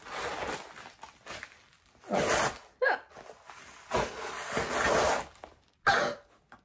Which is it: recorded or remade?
recorded